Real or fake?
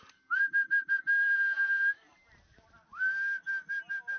real